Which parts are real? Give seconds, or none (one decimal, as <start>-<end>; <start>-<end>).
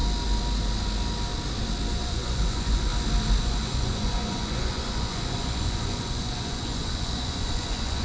0.0-1.9; 2.9-3.4